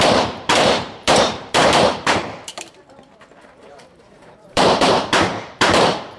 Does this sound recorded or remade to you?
remade